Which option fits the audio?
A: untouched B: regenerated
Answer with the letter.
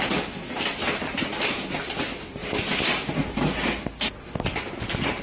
A